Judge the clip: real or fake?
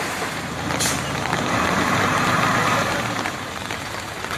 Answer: fake